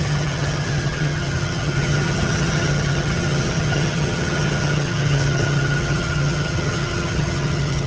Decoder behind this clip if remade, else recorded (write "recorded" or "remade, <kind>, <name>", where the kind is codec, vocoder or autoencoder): remade, vocoder, HiFi-GAN